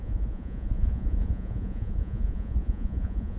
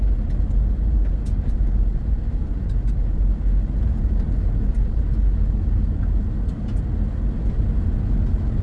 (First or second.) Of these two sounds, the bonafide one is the second